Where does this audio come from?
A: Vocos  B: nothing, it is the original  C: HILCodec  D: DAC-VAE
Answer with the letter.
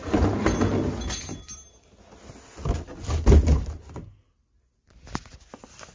B